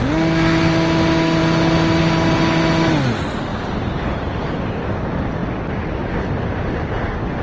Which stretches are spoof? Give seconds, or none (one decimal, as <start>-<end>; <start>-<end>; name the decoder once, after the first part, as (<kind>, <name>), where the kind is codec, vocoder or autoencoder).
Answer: none